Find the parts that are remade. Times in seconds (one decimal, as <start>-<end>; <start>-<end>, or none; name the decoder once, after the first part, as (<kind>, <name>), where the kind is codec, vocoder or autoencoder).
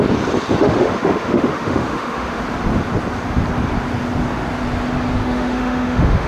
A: 0.6-2.4 (autoencoder, DAC-VAE); 5.2-6.3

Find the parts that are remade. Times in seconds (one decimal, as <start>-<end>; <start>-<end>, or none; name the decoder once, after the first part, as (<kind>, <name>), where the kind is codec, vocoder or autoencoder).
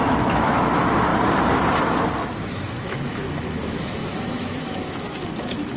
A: 0.0-1.1 (autoencoder, DAC-VAE); 2.4-5.8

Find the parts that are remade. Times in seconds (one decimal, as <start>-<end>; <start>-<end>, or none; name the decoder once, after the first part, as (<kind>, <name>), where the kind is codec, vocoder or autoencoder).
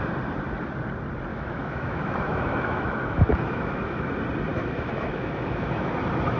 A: 1.3-4.1 (autoencoder, DAC-VAE); 4.5-5.9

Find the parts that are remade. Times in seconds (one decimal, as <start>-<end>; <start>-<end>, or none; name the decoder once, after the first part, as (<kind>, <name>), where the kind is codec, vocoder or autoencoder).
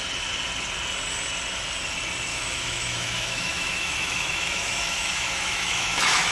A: 2.3-6.3 (autoencoder, DAC-VAE)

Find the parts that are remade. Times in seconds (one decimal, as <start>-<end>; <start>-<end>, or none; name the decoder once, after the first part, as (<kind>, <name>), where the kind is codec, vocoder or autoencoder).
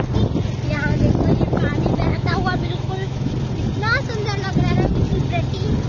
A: 2.1-3.3 (autoencoder, DAC-VAE)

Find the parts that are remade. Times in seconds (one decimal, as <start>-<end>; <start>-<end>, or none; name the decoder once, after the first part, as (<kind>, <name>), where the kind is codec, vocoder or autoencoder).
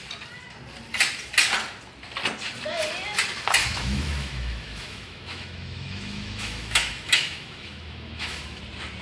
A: 3.6-8.6 (autoencoder, DAC-VAE)